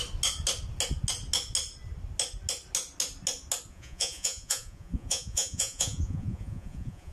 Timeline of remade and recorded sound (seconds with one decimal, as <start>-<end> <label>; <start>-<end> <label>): 0.0-3.7 recorded; 3.7-7.1 remade